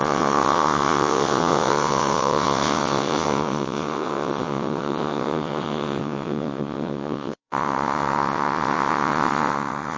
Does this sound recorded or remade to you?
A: remade